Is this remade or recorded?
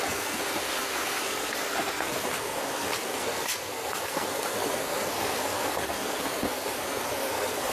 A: remade